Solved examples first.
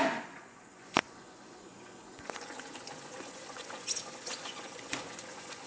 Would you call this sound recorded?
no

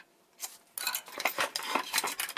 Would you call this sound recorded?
yes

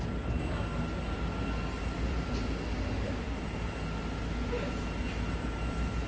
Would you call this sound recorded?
yes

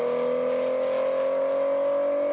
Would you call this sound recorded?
yes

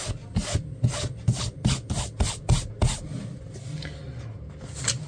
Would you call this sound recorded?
yes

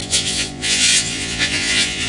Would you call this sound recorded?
no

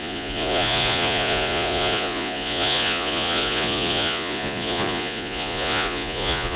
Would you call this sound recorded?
no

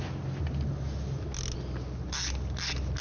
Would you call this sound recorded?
yes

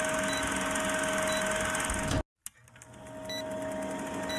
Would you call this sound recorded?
yes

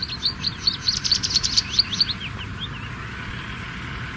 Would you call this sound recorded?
yes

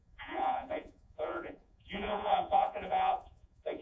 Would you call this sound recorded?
no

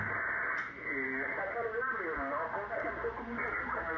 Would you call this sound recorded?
yes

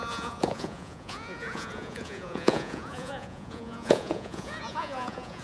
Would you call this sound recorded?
no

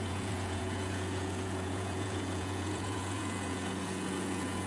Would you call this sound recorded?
no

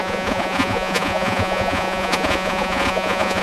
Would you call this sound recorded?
no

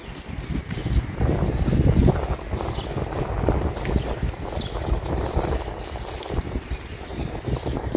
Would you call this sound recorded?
yes